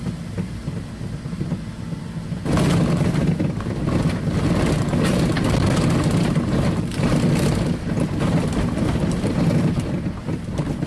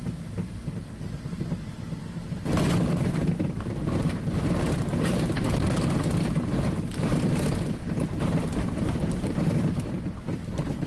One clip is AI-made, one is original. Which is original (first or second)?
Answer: first